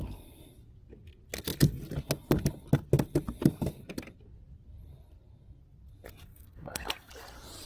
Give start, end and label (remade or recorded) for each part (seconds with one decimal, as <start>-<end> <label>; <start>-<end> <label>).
0.0-6.3 recorded; 6.3-7.1 remade; 7.1-7.7 recorded